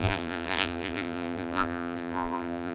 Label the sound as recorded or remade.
remade